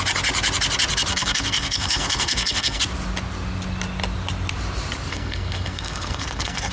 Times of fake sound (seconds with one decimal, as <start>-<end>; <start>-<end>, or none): 1.1-2.8; 5.1-6.7